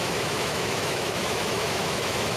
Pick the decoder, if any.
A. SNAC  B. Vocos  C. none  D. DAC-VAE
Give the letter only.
D